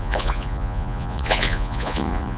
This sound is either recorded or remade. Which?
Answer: remade